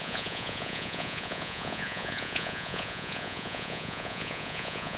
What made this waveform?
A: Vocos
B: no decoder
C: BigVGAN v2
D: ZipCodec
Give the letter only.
A